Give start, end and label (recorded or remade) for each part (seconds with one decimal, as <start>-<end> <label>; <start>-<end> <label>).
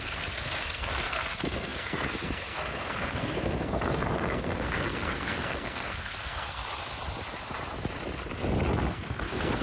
0.0-6.6 remade; 6.6-8.9 recorded; 8.9-9.6 remade